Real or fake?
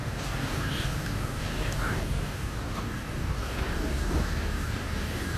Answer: fake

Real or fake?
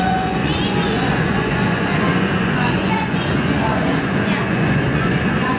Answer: fake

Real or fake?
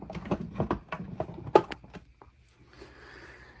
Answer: real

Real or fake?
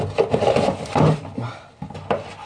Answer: real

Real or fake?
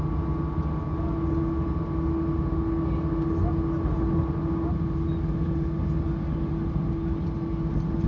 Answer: real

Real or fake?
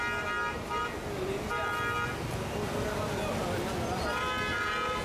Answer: real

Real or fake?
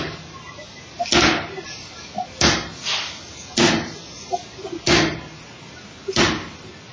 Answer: real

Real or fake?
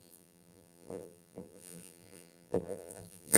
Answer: fake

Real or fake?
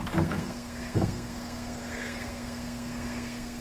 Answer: fake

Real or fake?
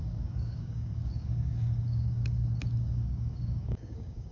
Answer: fake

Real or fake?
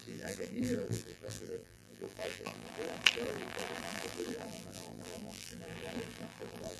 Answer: fake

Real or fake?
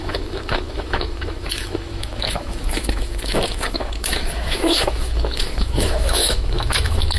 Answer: fake